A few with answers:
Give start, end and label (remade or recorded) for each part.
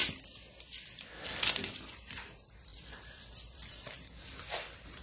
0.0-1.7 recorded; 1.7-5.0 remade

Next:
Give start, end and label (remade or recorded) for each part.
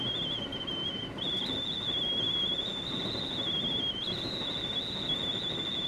0.0-0.5 recorded; 0.5-1.1 remade; 1.1-5.9 recorded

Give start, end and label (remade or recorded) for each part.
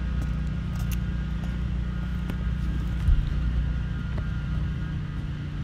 0.0-4.3 recorded; 4.3-5.0 remade; 5.0-5.6 recorded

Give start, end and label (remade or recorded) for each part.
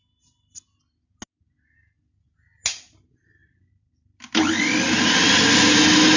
0.0-3.4 recorded; 3.4-4.5 remade; 4.5-6.2 recorded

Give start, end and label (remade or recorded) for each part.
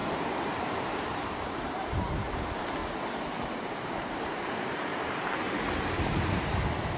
0.0-2.8 remade; 2.8-3.5 recorded; 3.5-7.0 remade